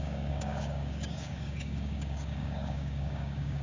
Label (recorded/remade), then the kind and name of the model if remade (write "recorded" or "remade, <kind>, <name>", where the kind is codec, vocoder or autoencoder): remade, codec, DAC